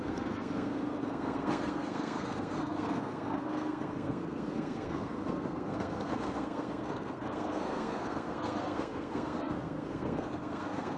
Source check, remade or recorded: remade